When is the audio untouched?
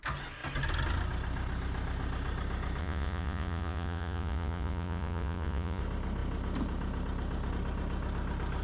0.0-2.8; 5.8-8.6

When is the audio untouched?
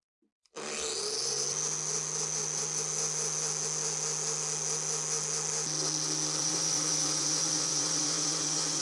0.0-6.4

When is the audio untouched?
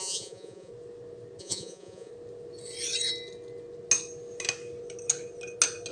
0.7-1.4; 2.1-5.9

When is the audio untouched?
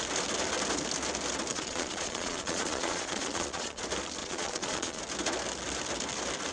0.0-1.5; 3.8-4.2; 5.0-6.5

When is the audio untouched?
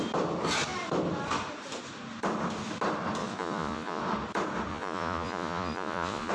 0.0-3.2; 4.0-4.7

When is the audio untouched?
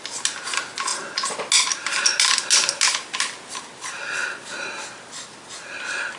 0.0-6.2